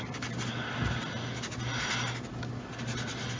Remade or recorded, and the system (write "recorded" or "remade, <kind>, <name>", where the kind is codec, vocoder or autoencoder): recorded